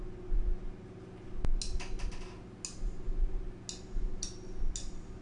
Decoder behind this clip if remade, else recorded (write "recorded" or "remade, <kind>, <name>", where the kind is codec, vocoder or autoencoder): recorded